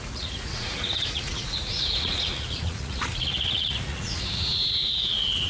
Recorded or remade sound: remade